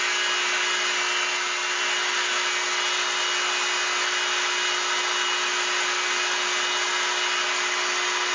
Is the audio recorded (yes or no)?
yes